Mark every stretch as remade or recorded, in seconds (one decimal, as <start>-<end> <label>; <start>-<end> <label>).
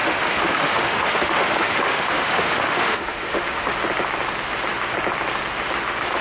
0.0-3.7 remade; 3.7-6.2 recorded